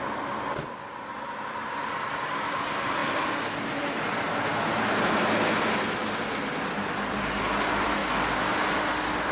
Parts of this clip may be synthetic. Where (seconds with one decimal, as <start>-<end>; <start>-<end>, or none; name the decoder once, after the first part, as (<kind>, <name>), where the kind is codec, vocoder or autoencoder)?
none